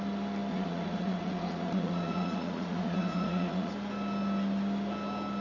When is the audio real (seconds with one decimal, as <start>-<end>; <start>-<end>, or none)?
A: 0.0-0.5; 3.7-5.4